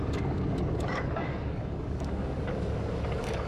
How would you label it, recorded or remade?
remade